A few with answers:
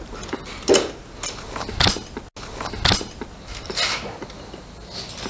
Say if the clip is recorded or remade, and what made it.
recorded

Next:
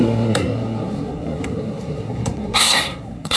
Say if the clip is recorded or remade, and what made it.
remade, codec, SNAC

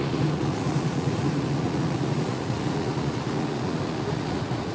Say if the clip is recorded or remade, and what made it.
remade, vocoder, Vocos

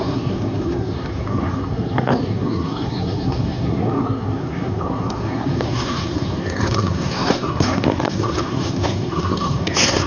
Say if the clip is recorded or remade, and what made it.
remade, codec, SNAC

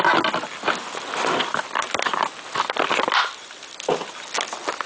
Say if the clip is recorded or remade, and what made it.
recorded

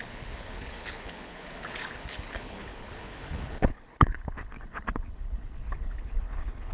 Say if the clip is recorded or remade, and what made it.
remade, codec, HILCodec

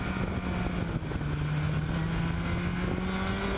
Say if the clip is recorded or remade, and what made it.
recorded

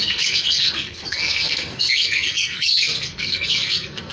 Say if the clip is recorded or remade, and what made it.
remade, codec, SNAC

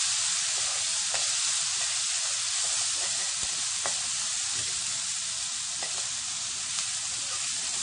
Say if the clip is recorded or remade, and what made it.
recorded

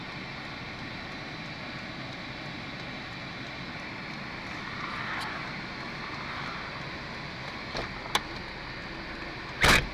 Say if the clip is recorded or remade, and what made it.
recorded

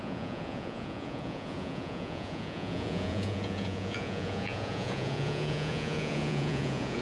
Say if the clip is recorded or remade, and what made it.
remade, vocoder, Vocos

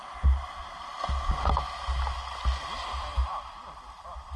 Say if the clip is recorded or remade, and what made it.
recorded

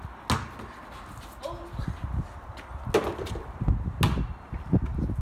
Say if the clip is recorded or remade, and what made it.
recorded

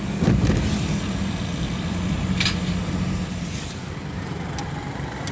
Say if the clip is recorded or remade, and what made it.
remade, vocoder, BigVGAN v2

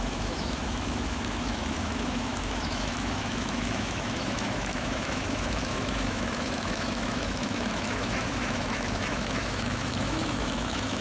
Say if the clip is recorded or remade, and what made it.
remade, autoencoder, DAC-VAE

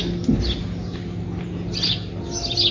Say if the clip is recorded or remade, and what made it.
recorded